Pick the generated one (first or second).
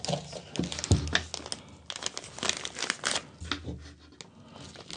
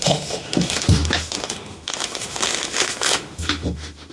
second